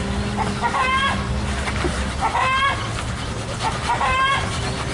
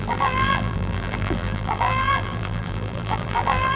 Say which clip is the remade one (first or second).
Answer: second